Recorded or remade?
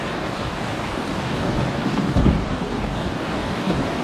remade